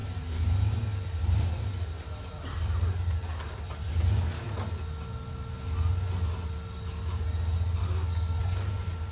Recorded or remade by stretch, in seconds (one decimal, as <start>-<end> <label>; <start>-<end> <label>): 0.0-7.8 recorded; 7.8-8.4 remade; 8.4-9.1 recorded